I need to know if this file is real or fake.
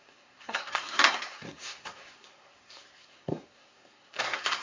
fake